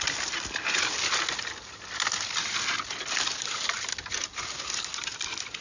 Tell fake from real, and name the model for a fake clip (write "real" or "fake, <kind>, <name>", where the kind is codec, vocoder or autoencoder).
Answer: real